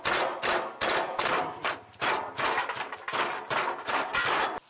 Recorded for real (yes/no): yes